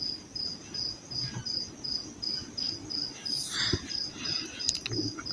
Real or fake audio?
real